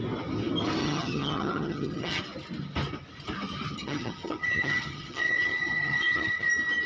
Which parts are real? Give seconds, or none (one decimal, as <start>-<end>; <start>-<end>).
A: 0.0-0.8; 2.2-3.8; 6.5-6.9